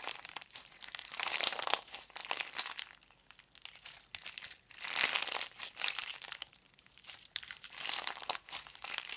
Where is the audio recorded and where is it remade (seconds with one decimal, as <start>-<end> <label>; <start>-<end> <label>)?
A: 0.0-2.2 remade; 2.2-5.8 recorded; 5.8-9.2 remade

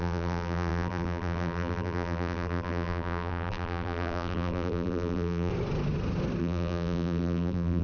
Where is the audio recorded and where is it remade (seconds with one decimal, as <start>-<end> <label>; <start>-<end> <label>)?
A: 0.0-5.5 remade; 5.5-6.4 recorded; 6.4-7.8 remade

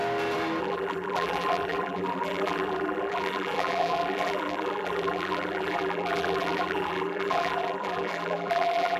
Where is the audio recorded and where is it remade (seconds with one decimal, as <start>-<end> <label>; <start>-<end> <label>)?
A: 0.0-0.6 recorded; 0.6-9.0 remade

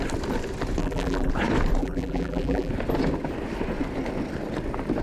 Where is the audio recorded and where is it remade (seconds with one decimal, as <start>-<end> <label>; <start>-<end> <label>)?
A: 0.0-0.8 recorded; 0.8-1.3 remade; 1.3-1.8 recorded; 1.8-2.7 remade; 2.7-5.0 recorded

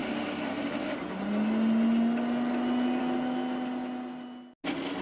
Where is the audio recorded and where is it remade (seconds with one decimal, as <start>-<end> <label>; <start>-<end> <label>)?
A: 0.0-5.0 recorded

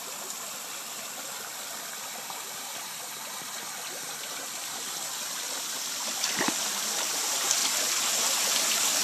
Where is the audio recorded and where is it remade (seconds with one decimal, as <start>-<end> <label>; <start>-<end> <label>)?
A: 0.0-7.6 remade; 7.6-8.3 recorded; 8.3-9.0 remade

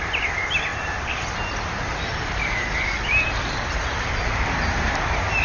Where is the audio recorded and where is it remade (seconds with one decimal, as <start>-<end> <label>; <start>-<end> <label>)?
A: 0.0-0.7 recorded; 0.7-1.2 remade; 1.2-5.4 recorded

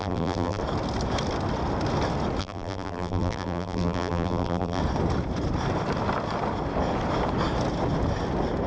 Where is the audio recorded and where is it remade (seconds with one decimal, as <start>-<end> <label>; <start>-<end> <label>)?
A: 0.0-0.6 remade; 0.6-2.4 recorded; 2.4-4.8 remade; 4.8-8.7 recorded